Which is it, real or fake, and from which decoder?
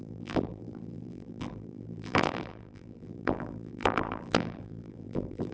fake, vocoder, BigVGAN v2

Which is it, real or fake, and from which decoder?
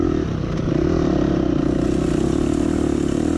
real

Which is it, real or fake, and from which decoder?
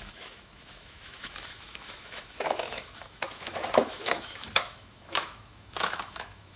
fake, autoencoder, DAC-VAE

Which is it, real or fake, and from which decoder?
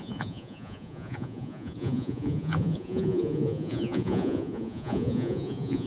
fake, vocoder, Vocos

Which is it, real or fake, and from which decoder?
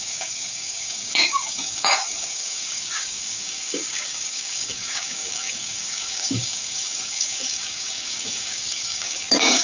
fake, codec, DAC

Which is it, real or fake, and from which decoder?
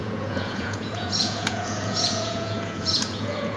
fake, vocoder, Vocos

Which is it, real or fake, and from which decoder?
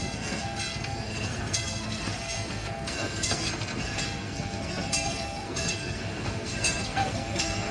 fake, codec, SNAC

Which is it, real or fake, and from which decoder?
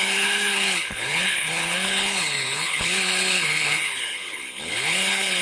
fake, codec, HILCodec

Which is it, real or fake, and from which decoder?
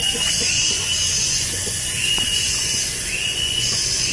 fake, vocoder, Vocos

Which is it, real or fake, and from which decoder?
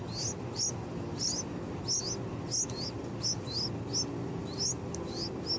real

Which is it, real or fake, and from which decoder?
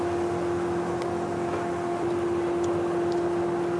real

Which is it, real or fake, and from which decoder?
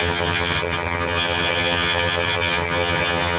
fake, vocoder, HiFi-GAN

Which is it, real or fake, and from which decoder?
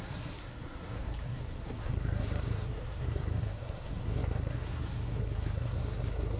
fake, codec, SNAC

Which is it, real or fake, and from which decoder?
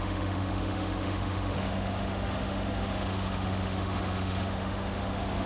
fake, autoencoder, DAC-VAE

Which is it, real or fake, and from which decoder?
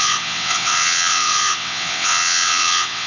fake, vocoder, WaveNeXt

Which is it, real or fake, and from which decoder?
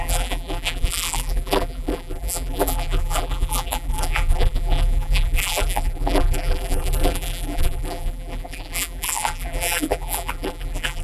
fake, vocoder, BigVGAN v2